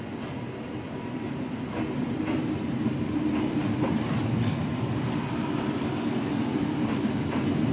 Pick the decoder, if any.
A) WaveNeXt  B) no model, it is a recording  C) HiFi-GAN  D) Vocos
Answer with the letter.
B